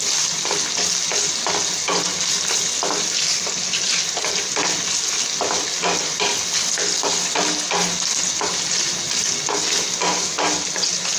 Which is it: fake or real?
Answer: real